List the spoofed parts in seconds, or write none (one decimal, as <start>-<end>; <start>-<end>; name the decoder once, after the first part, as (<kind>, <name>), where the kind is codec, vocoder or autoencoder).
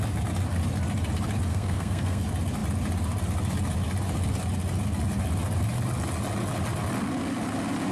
1.5-2.2 (codec, SNAC)